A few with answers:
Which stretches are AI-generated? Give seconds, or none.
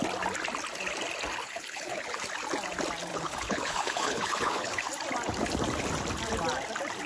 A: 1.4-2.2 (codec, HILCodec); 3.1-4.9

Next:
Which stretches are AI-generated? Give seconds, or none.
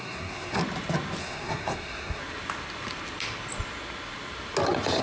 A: 0.0-0.6 (codec, SNAC); 1.2-2.2